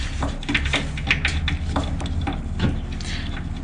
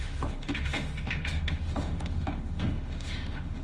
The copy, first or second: second